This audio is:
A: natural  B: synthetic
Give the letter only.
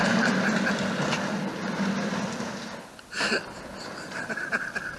A